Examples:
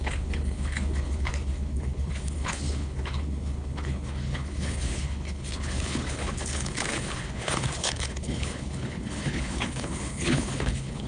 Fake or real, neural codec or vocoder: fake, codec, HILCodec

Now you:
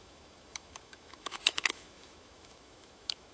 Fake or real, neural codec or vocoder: fake, autoencoder, DAC-VAE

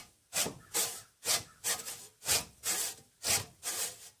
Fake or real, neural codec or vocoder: real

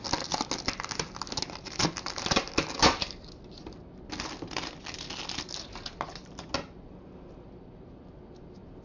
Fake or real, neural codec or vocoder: real